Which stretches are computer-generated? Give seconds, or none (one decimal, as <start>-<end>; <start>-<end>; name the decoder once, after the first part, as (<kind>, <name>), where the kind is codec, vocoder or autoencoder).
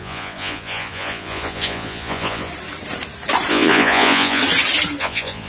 0.0-2.5 (vocoder, Vocos); 3.5-4.4; 5.0-5.5